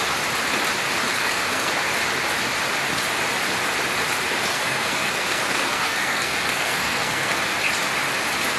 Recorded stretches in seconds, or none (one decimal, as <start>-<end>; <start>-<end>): 0.0-1.1; 1.7-4.5; 7.4-8.6